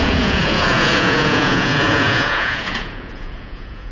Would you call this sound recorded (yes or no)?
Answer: no